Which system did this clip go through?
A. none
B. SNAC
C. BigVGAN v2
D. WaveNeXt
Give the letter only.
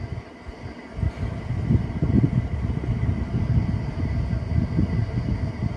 A